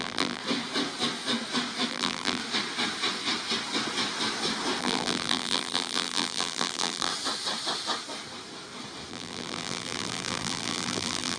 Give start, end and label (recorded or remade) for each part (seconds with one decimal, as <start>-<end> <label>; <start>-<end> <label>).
0.0-0.4 remade; 0.4-1.9 recorded; 1.9-2.4 remade; 2.4-4.8 recorded; 4.8-7.1 remade; 7.1-9.1 recorded; 9.1-11.4 remade